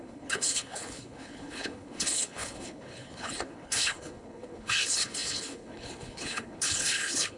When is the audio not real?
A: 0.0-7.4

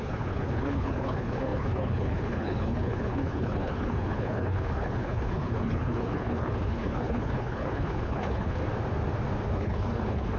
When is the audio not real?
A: 0.0-8.6; 9.5-10.4

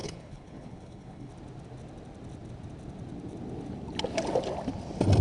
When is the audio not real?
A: 0.0-1.3

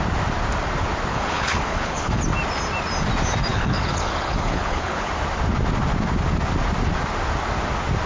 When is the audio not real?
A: 1.1-2.2; 3.5-5.1

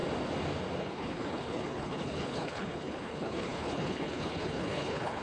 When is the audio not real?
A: 0.8-5.2